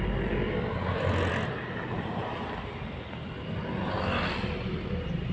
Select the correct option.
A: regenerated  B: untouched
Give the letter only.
B